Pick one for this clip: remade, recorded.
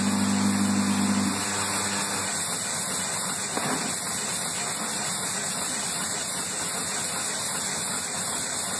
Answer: recorded